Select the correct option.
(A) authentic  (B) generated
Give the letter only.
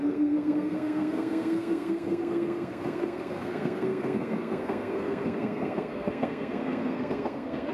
B